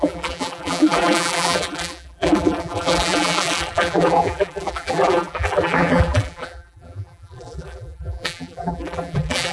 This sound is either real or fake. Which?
fake